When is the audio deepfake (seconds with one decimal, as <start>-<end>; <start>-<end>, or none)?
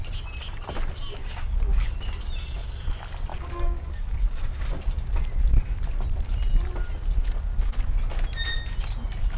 1.2-1.9; 3.3-4.6